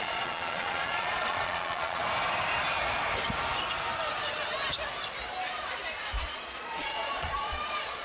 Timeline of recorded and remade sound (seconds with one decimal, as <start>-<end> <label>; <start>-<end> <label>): 0.0-2.0 remade; 2.0-6.2 recorded; 6.2-8.0 remade